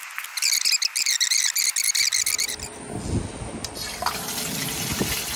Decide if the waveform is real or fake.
real